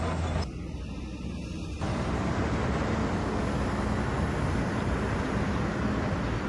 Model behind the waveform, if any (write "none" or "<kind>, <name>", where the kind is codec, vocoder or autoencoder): none